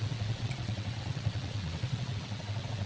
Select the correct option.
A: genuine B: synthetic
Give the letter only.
B